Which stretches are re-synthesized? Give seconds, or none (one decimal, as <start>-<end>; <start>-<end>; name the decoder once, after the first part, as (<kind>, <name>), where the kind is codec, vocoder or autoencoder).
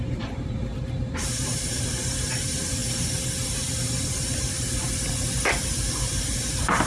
0.0-2.8 (vocoder, BigVGAN v2); 6.5-6.9